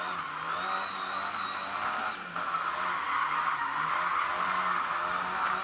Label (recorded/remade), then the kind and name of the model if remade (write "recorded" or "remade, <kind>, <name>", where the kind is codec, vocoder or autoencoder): recorded